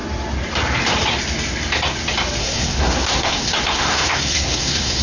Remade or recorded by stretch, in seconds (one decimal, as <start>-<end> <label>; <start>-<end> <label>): 0.0-2.4 recorded; 2.4-5.0 remade